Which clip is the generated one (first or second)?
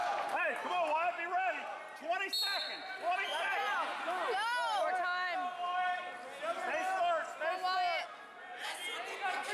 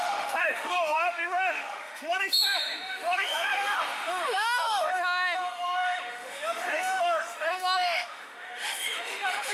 second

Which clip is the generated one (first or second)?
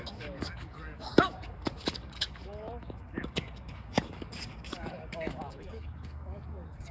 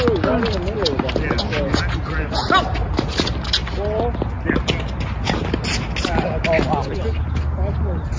first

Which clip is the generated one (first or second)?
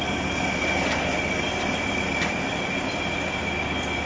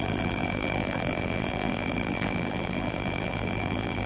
second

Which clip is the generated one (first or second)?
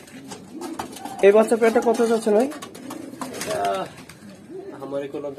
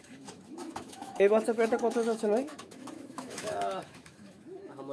second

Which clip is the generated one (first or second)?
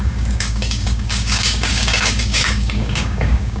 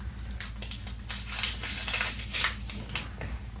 first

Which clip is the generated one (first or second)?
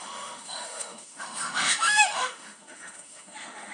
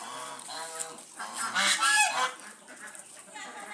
first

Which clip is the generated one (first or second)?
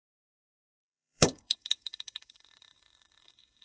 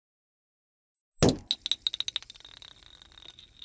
first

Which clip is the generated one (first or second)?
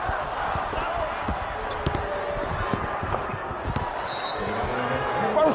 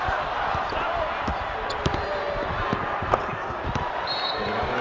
second